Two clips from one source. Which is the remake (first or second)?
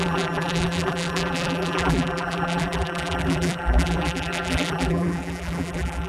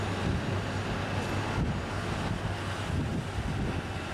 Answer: first